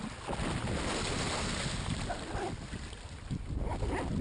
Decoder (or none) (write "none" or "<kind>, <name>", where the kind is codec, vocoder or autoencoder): none